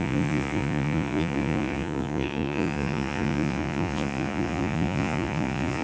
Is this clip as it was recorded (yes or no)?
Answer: no